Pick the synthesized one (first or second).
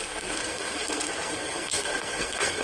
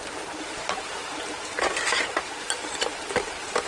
first